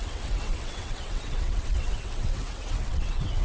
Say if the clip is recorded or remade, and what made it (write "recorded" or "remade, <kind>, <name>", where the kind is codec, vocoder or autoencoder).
remade, vocoder, WaveNeXt